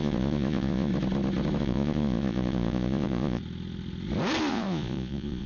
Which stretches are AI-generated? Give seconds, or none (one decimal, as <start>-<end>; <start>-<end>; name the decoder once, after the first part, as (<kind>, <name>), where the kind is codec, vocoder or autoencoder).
0.0-0.9 (vocoder, Vocos); 1.6-3.4; 4.5-5.5